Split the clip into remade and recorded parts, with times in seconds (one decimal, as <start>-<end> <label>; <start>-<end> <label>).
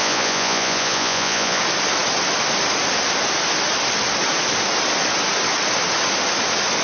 0.0-1.6 remade; 1.6-6.8 recorded